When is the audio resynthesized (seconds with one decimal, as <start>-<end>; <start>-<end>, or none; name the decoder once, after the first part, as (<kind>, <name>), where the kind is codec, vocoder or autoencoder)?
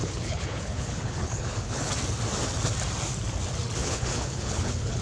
0.0-1.9 (codec, HILCodec); 3.8-5.0